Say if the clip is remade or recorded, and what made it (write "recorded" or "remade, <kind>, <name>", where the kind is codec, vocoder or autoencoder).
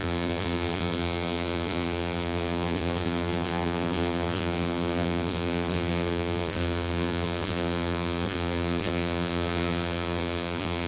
remade, vocoder, BigVGAN v2